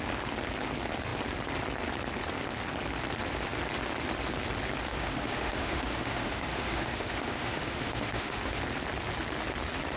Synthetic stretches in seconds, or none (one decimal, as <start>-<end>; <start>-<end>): 4.9-8.6